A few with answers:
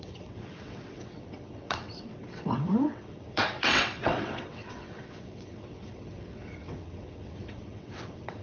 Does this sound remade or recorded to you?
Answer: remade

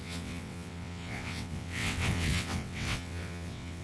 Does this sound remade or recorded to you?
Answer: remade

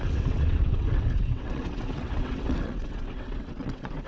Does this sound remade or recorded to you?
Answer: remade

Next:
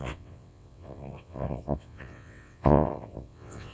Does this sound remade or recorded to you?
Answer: remade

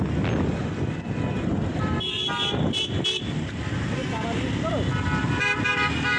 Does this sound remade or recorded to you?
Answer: recorded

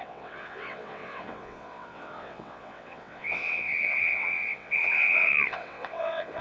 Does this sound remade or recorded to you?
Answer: remade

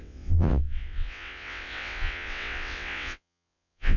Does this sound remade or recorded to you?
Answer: remade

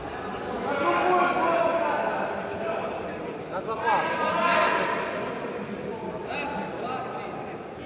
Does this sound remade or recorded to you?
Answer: recorded